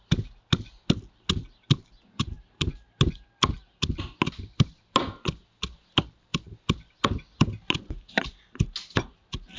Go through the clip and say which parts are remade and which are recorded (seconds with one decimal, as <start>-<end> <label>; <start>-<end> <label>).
0.0-9.6 recorded